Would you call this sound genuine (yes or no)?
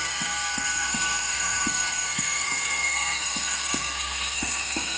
no